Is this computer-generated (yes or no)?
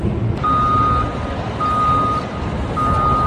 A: no